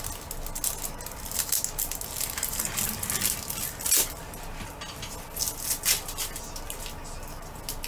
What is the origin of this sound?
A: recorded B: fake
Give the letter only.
A